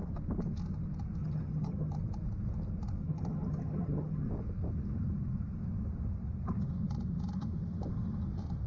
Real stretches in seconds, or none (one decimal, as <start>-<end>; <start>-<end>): 0.0-1.2; 2.0-3.0; 4.3-8.7